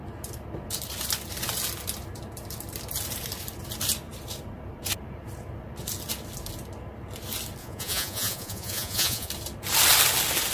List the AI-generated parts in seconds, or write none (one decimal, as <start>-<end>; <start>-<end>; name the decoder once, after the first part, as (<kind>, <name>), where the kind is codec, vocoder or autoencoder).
7.6-9.3 (vocoder, Vocos)